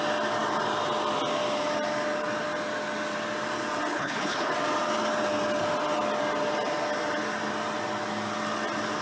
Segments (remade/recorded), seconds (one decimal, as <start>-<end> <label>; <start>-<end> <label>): 0.0-3.9 recorded; 3.9-4.5 remade; 4.5-9.0 recorded